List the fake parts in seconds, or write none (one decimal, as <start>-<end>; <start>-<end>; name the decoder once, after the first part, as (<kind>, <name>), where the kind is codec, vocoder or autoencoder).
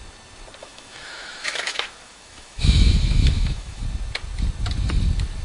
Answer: 0.6-3.8 (autoencoder, DAC-VAE)